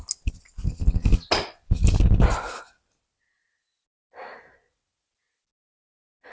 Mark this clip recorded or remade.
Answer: recorded